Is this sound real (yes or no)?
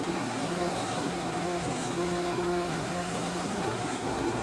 no